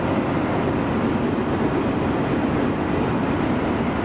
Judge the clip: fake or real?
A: real